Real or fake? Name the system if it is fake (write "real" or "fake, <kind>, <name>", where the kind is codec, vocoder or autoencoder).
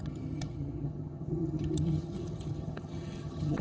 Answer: fake, vocoder, HiFi-GAN